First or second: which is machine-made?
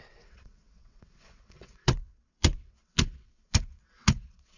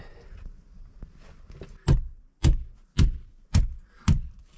first